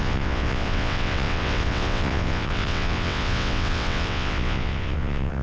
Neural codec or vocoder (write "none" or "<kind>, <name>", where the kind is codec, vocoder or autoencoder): vocoder, WaveNeXt